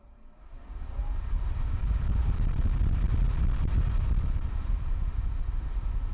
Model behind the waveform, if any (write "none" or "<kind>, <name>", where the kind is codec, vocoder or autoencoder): none